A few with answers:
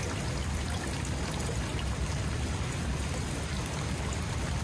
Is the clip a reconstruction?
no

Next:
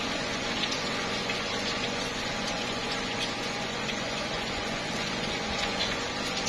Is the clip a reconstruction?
yes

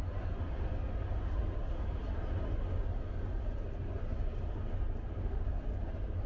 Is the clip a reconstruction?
no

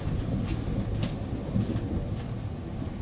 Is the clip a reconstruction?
no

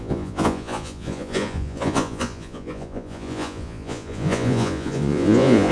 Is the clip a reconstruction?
yes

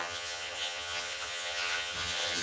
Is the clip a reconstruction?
yes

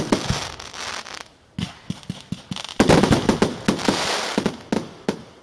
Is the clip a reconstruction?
no